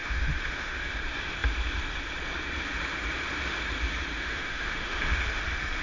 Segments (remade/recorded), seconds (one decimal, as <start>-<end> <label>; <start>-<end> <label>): 0.0-0.9 remade; 0.9-4.1 recorded; 4.1-5.2 remade; 5.2-5.8 recorded